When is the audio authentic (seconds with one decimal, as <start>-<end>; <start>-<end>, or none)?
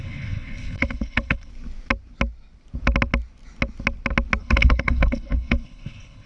1.5-4.4